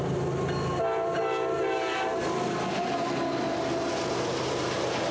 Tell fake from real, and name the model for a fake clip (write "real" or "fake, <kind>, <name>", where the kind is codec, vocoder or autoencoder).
real